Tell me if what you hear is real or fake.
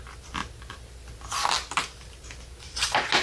real